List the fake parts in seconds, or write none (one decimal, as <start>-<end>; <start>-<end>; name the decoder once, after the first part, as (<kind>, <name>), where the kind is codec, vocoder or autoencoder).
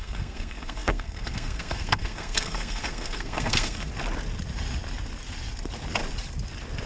0.0-3.9 (codec, SNAC)